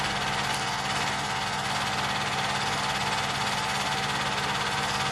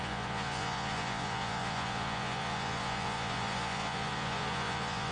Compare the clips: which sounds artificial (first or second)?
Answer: second